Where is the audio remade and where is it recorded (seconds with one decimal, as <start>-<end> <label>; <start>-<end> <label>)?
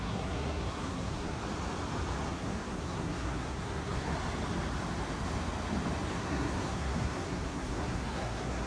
0.0-1.4 remade; 1.4-2.3 recorded; 2.3-4.1 remade; 4.1-6.1 recorded; 6.1-8.7 remade